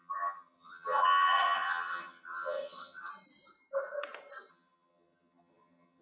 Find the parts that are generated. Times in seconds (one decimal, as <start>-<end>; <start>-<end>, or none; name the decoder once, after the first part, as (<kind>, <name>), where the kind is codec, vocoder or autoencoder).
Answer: 0.0-3.1 (vocoder, HiFi-GAN); 4.5-6.0